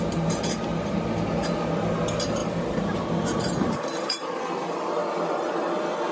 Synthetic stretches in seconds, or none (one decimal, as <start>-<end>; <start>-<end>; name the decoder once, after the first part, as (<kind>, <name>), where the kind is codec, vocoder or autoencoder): 2.4-3.8 (vocoder, BigVGAN v2)